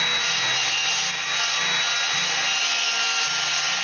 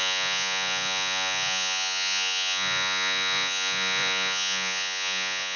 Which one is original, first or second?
first